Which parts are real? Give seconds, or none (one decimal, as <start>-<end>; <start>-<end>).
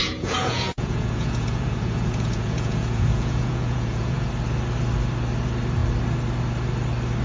4.3-7.2